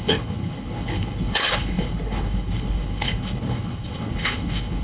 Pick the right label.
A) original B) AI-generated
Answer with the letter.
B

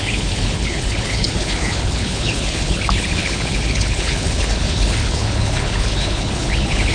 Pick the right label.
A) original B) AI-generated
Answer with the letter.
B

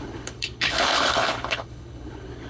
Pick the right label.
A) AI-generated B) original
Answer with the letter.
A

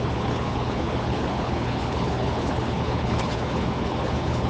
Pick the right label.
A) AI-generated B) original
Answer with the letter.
A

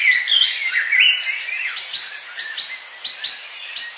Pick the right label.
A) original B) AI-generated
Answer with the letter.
A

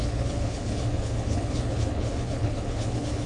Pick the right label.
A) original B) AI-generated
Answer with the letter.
B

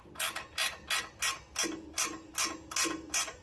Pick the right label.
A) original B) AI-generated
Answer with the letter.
A